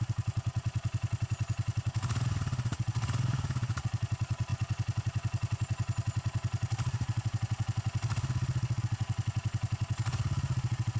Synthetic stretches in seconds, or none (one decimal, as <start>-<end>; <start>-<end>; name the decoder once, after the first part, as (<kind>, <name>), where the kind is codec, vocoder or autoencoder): none